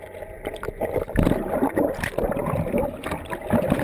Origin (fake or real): fake